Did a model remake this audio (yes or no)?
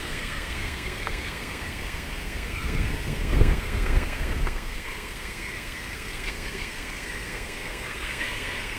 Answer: yes